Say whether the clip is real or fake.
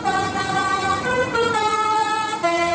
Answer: fake